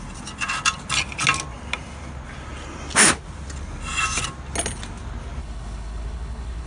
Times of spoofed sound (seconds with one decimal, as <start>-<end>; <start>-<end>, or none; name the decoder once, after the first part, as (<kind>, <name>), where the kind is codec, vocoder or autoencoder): 5.4-6.7 (codec, HILCodec)